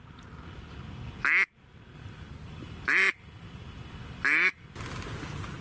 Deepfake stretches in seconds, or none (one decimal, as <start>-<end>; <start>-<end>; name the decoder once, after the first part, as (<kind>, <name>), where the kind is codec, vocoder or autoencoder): none